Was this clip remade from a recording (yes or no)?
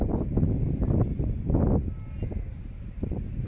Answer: no